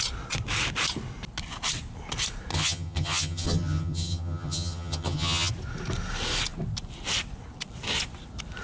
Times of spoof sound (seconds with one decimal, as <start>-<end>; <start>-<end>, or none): 2.5-5.5

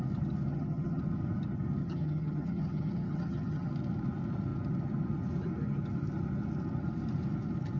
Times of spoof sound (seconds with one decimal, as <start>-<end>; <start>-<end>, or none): 0.5-1.0; 1.8-3.7

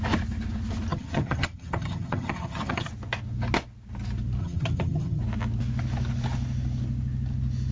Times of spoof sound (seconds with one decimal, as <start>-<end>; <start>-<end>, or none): 0.9-2.9; 4.4-5.2

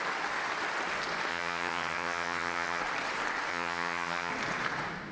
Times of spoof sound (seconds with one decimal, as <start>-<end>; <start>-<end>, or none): 1.3-2.8; 3.5-4.3

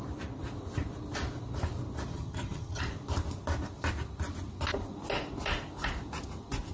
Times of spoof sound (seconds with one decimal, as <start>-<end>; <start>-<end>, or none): 2.1-2.8

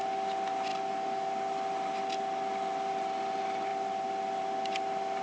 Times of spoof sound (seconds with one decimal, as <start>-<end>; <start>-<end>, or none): none

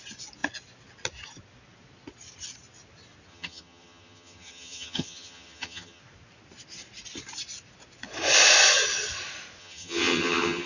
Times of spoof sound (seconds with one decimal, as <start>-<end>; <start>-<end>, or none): 3.3-6.0; 9.6-10.7

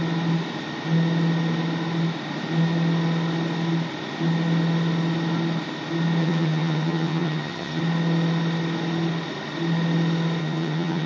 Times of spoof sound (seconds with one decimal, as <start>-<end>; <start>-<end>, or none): 6.2-7.8; 10.4-11.1